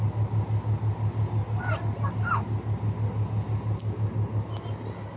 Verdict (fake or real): real